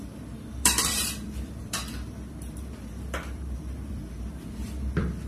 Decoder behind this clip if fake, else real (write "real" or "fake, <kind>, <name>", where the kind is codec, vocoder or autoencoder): fake, vocoder, BigVGAN v2